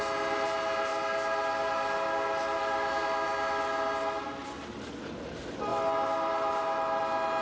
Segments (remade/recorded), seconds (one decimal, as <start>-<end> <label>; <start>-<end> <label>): 0.0-7.4 recorded

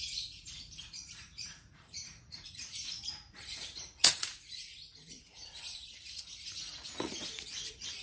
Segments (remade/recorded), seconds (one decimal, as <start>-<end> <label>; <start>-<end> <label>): 0.0-8.0 remade

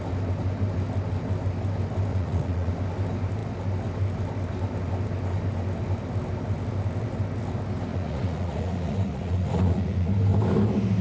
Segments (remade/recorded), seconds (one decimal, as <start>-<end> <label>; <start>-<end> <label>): 0.0-2.1 recorded; 2.1-2.7 remade; 2.7-7.9 recorded; 7.9-10.1 remade; 10.1-11.0 recorded

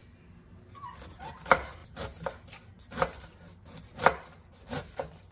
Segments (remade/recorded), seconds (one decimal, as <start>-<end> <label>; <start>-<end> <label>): 0.0-1.2 recorded; 1.2-1.8 remade; 1.8-5.3 recorded

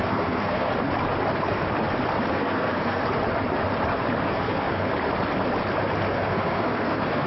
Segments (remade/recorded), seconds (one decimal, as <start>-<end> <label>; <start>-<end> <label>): 0.0-0.7 remade; 0.7-2.3 recorded; 2.3-3.0 remade; 3.0-4.2 recorded; 4.2-4.9 remade; 4.9-6.1 recorded; 6.1-7.3 remade

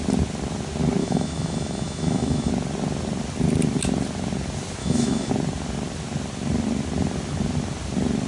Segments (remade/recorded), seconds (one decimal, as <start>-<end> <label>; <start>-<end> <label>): 0.0-1.0 recorded; 1.0-2.5 remade; 2.5-4.8 recorded; 4.8-5.3 remade; 5.3-8.3 recorded

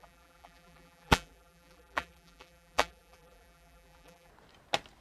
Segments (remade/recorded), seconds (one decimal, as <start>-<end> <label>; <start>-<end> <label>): 0.0-4.3 remade; 4.3-5.0 recorded

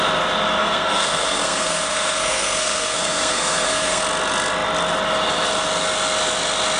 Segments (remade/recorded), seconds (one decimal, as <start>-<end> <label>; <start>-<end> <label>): 0.0-0.6 recorded; 0.6-4.0 remade; 4.0-6.8 recorded